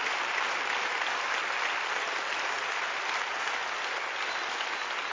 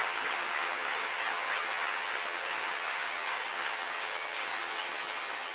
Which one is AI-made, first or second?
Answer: second